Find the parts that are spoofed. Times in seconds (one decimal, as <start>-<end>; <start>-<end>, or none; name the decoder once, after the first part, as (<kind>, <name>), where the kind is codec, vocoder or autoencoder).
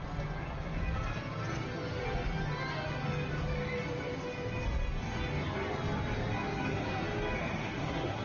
7.4-8.2 (codec, SNAC)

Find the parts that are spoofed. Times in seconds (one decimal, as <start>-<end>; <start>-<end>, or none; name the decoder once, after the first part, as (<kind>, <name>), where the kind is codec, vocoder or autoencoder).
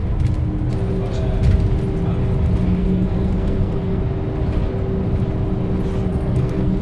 2.8-4.0 (codec, SNAC); 6.1-6.8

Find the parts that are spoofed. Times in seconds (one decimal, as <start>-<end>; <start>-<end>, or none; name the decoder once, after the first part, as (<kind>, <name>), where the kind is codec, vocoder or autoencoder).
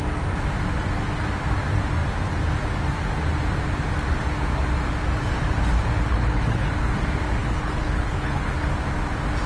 6.1-6.7 (codec, HILCodec); 7.4-8.7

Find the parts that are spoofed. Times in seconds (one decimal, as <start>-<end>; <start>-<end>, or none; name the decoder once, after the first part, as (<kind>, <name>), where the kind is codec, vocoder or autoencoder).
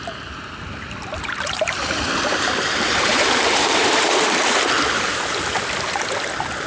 1.0-3.8 (vocoder, BigVGAN v2)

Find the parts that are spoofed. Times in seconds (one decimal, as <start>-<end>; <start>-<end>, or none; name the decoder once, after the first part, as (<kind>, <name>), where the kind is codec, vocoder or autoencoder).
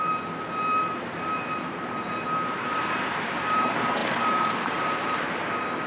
0.0-5.9 (vocoder, BigVGAN v2)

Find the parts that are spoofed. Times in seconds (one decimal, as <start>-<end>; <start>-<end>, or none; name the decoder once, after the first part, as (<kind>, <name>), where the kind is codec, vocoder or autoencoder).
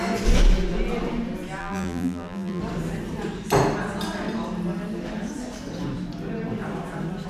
1.6-2.6 (vocoder, BigVGAN v2)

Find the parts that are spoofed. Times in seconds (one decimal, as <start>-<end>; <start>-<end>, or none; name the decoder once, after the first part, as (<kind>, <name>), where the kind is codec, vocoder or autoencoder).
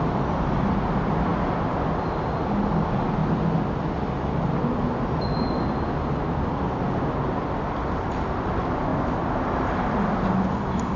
none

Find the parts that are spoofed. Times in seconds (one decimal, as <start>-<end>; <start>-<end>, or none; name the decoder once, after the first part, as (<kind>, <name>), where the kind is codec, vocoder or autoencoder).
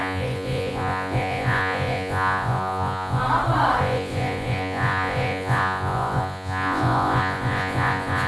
0.0-3.2 (vocoder, Vocos); 3.8-8.3